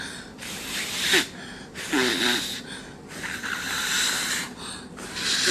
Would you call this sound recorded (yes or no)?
yes